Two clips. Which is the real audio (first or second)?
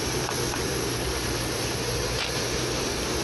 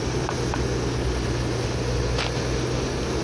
second